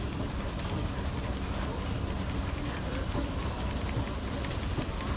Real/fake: real